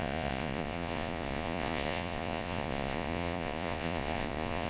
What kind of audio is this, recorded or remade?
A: remade